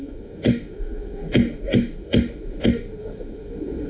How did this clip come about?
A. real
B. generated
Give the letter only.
B